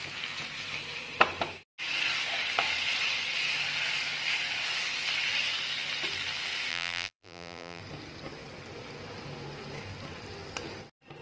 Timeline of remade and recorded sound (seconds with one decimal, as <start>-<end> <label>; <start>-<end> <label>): 0.0-6.7 recorded; 6.7-7.8 remade; 7.8-11.2 recorded